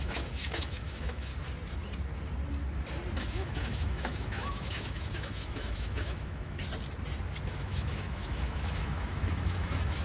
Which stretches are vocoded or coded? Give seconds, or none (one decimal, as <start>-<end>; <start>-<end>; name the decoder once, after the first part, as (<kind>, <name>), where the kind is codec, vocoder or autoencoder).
0.0-1.3 (autoencoder, DAC-VAE); 3.2-6.6; 7.5-10.0